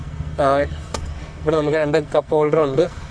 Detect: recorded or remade remade